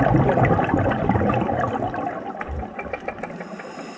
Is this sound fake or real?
real